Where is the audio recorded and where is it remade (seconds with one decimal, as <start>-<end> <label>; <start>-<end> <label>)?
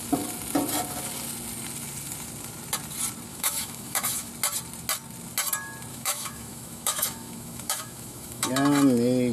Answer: 0.0-3.3 recorded; 3.3-4.3 remade; 4.3-5.9 recorded; 5.9-8.5 remade; 8.5-9.3 recorded